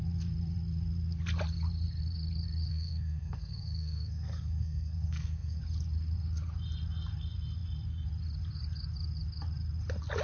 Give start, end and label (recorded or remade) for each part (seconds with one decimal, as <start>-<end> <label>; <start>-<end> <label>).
0.0-2.7 recorded; 2.7-5.6 remade; 5.6-10.2 recorded